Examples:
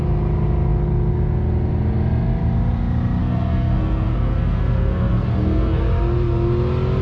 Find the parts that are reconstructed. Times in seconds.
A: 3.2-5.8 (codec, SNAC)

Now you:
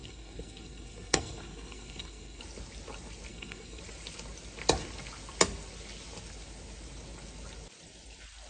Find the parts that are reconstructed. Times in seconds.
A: 0.0-2.4 (codec, SNAC); 3.3-3.8

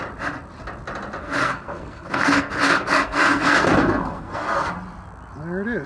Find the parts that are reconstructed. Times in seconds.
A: 1.2-4.7 (codec, SNAC)

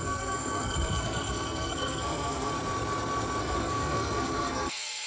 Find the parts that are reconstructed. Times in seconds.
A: 0.0-2.5 (codec, SNAC); 3.4-5.1